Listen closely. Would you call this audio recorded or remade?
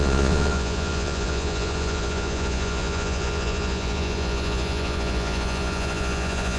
remade